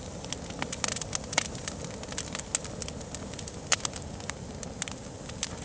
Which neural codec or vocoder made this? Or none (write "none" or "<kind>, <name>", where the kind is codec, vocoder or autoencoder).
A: none